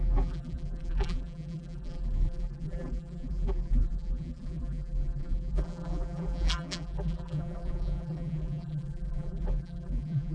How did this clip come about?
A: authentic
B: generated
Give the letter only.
B